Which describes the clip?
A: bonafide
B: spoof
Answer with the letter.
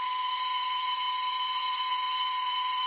B